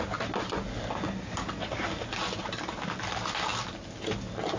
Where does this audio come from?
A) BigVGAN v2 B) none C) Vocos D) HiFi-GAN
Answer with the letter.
B